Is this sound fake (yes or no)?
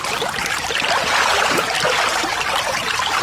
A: no